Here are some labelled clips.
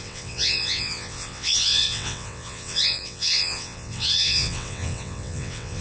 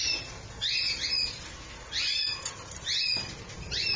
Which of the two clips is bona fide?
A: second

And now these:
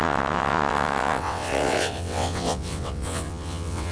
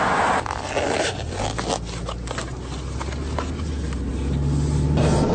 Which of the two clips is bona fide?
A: second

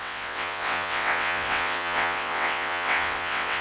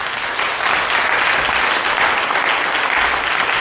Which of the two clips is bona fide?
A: second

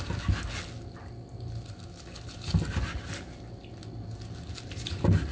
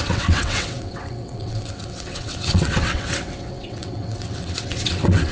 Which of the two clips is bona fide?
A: first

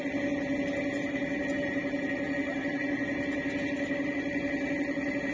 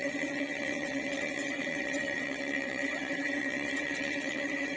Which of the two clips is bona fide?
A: first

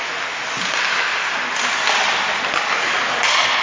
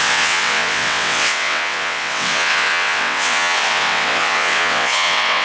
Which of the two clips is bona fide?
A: first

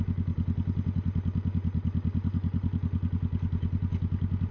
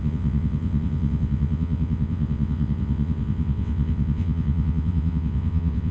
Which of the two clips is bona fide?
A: first